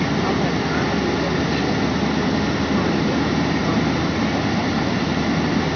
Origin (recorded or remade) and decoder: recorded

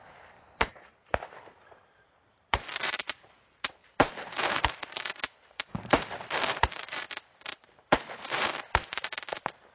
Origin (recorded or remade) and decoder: remade, vocoder, BigVGAN v2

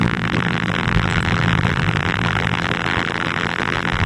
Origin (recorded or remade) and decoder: remade, vocoder, BigVGAN v2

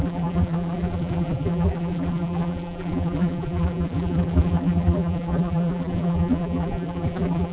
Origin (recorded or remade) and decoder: remade, vocoder, BigVGAN v2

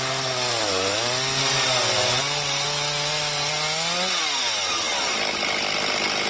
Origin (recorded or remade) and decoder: recorded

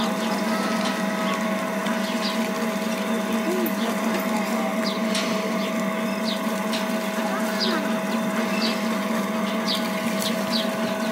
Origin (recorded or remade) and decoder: recorded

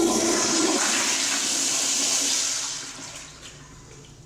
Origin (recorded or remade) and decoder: recorded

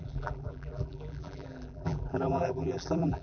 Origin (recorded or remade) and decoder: remade, vocoder, BigVGAN v2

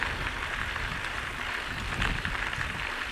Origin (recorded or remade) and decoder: remade, vocoder, BigVGAN v2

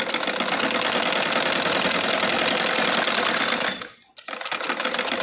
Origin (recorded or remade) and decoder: recorded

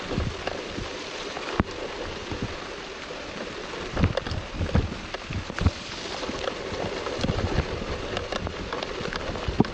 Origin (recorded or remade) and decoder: recorded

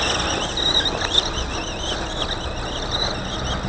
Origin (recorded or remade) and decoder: recorded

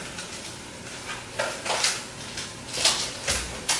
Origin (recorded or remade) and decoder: recorded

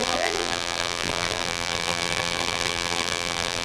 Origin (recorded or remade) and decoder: remade, vocoder, BigVGAN v2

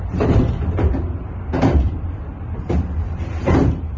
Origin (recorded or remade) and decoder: remade, vocoder, BigVGAN v2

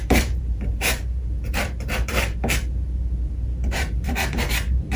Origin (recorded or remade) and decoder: remade, vocoder, BigVGAN v2